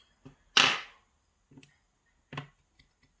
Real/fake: real